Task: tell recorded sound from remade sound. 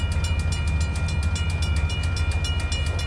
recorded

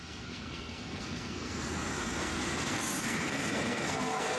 remade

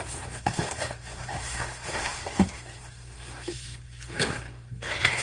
remade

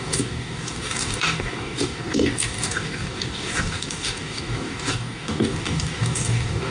remade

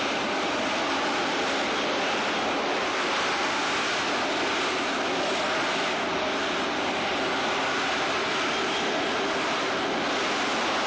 recorded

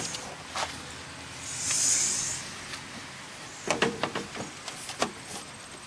recorded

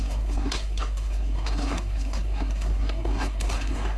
remade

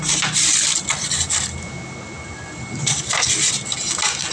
recorded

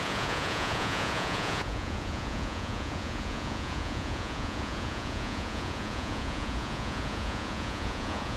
remade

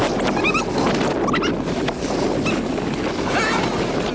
recorded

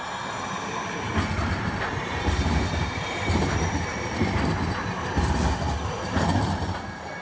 recorded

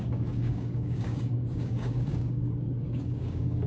remade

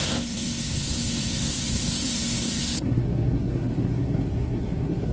remade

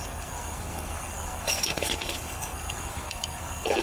remade